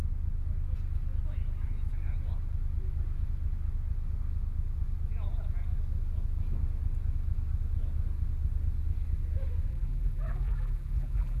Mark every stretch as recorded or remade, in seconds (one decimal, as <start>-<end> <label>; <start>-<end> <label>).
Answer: 0.0-9.7 recorded; 9.7-11.4 remade